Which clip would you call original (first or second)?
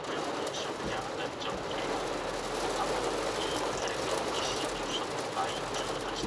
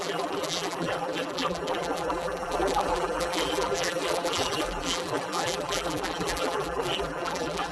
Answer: first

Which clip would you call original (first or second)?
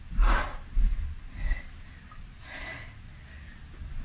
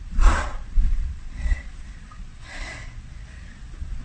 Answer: first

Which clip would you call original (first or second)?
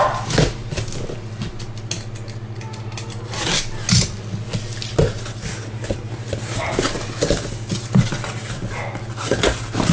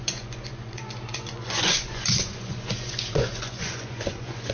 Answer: first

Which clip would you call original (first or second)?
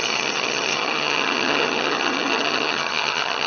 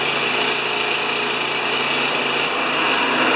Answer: second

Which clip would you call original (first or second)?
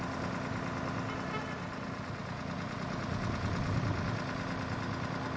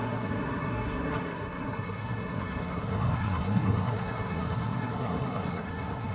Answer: first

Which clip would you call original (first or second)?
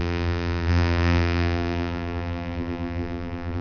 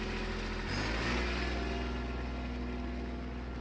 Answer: second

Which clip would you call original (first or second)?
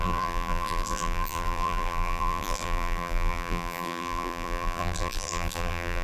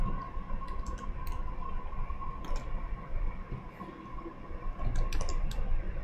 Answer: second